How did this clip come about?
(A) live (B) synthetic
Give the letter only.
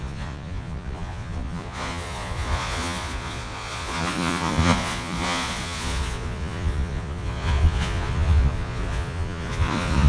B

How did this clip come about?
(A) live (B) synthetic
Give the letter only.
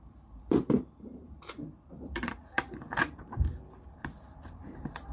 B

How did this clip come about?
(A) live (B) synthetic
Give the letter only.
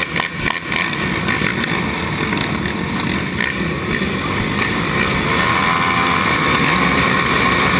A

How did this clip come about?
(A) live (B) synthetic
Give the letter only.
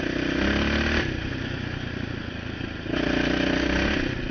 A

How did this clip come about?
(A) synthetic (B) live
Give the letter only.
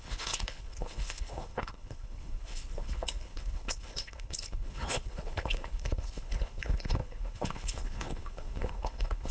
A